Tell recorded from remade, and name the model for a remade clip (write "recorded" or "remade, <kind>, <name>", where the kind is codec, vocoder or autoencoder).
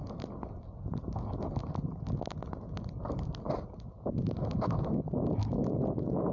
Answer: recorded